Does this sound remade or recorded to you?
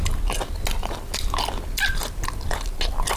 recorded